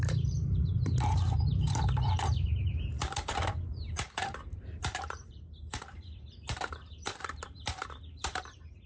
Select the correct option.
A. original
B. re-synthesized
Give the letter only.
B